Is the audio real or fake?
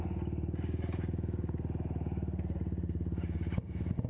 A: real